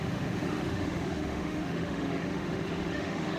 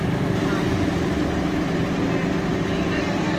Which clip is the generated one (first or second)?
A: first